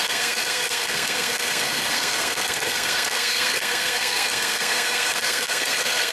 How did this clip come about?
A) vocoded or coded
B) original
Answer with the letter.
A